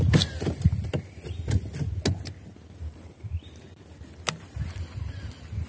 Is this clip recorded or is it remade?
recorded